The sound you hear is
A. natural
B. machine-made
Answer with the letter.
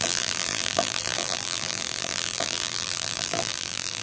B